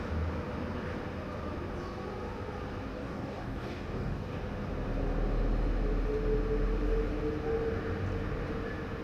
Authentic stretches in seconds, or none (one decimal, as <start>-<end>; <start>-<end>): 0.0-2.9; 4.4-9.0